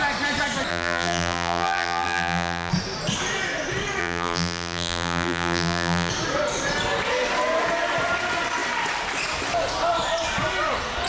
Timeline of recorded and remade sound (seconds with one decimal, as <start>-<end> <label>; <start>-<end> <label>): 0.0-0.7 recorded; 0.7-2.7 remade; 2.7-4.0 recorded; 4.0-6.1 remade; 6.1-11.1 recorded